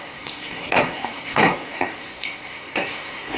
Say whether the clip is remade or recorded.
remade